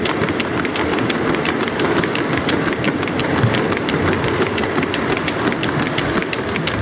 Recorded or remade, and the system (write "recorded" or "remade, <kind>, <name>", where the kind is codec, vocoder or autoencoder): remade, vocoder, BigVGAN v2